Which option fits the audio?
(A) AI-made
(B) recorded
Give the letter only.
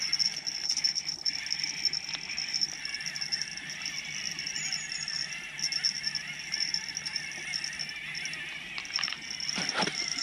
B